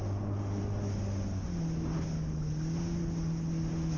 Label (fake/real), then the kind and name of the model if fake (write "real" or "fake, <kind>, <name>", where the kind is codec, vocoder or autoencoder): real